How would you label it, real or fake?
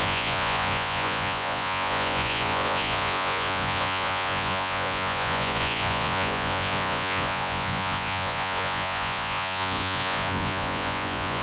fake